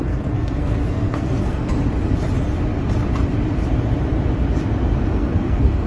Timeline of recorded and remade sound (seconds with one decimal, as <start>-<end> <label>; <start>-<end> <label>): 0.0-1.7 remade; 1.7-5.1 recorded; 5.1-5.9 remade